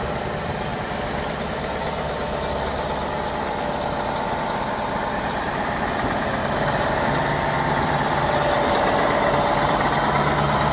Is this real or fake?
real